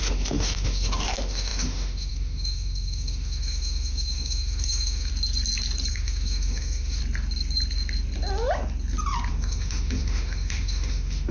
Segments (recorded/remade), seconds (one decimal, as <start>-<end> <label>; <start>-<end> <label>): 0.0-5.1 remade; 5.1-5.9 recorded; 5.9-7.0 remade; 7.0-9.3 recorded; 9.3-11.3 remade